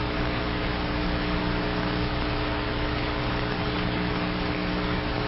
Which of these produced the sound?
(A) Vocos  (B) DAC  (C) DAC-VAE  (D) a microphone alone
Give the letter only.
B